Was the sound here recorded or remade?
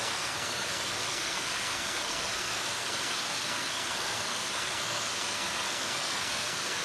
remade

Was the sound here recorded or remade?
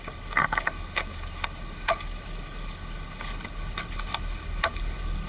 remade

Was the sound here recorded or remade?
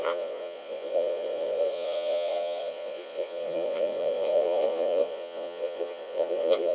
remade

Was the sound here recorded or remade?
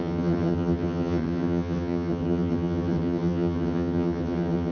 remade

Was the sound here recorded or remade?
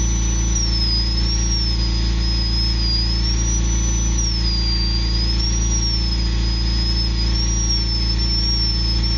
recorded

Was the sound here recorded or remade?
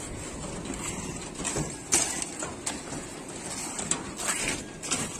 recorded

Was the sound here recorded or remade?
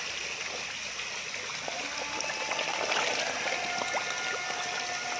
recorded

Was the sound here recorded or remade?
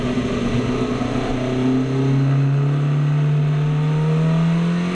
recorded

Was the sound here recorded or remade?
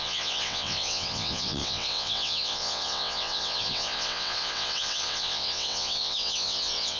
remade